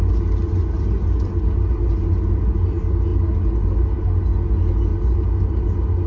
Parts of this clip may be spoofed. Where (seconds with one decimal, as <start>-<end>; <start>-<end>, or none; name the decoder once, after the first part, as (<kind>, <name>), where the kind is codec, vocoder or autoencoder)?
none